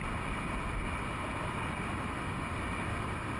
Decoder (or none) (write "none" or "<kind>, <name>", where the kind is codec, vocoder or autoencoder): none